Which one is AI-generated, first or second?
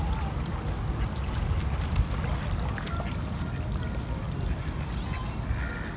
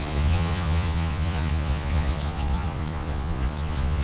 second